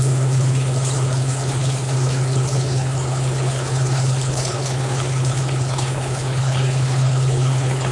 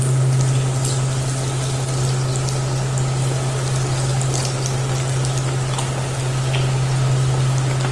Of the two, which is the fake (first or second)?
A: first